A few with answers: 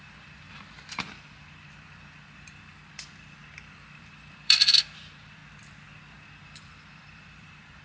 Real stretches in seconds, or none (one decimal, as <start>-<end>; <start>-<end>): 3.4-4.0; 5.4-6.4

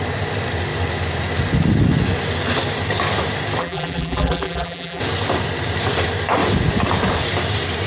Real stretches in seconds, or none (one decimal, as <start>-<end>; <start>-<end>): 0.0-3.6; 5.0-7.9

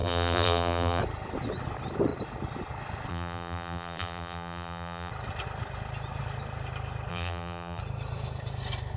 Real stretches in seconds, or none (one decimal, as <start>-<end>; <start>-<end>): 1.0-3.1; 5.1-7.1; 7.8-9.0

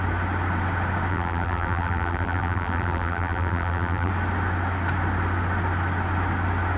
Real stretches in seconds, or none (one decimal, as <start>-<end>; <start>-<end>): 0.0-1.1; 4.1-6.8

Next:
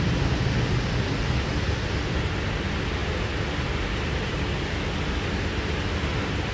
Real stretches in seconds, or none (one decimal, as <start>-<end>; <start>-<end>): 0.0-6.5